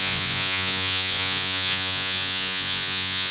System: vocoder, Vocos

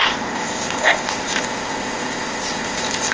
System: codec, ZipCodec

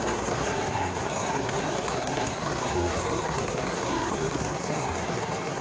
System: codec, SNAC